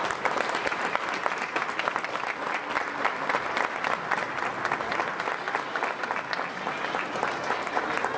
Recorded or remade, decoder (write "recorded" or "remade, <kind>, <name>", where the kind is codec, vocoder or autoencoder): recorded